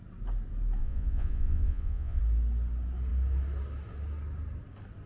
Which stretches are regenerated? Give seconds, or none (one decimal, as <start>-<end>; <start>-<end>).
0.8-2.2